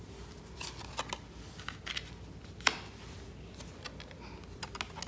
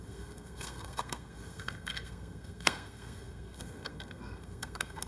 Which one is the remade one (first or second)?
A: second